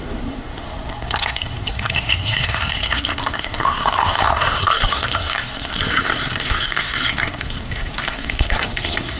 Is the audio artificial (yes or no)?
yes